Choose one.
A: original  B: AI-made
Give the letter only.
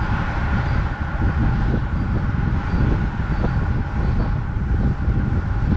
A